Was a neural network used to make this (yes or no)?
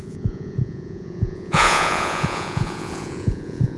yes